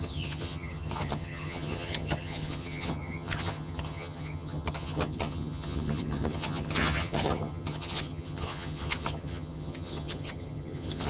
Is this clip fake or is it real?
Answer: fake